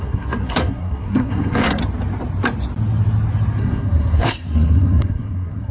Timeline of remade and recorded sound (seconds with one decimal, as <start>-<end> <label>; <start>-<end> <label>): 0.0-1.8 remade; 1.8-3.6 recorded; 3.6-5.7 remade